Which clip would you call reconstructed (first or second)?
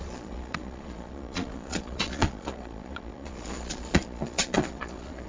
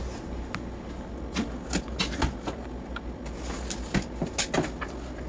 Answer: first